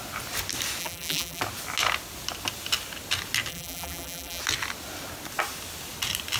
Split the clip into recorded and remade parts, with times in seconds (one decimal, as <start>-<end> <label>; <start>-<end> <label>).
0.0-0.8 recorded; 0.8-1.4 remade; 1.4-3.5 recorded; 3.5-4.4 remade; 4.4-6.4 recorded